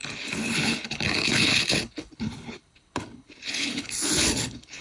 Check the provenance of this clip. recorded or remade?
remade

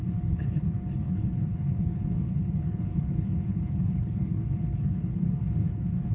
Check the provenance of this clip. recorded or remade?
remade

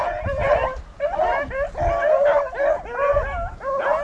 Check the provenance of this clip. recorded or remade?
recorded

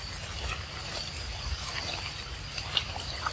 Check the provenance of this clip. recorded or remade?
recorded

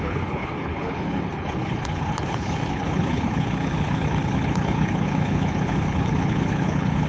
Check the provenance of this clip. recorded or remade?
remade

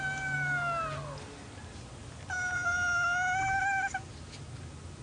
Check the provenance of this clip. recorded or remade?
recorded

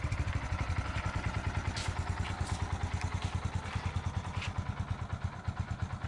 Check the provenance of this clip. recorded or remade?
recorded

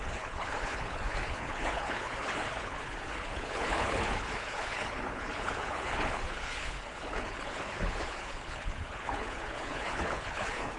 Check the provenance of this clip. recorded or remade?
remade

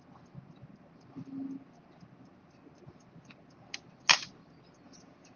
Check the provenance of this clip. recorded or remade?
recorded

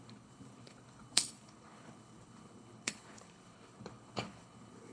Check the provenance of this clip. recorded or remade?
remade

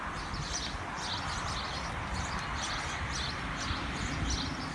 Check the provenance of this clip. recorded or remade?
recorded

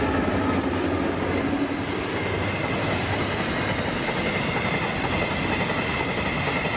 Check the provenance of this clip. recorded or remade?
recorded